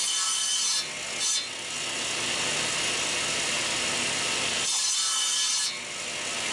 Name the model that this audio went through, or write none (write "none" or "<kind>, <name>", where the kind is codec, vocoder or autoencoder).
none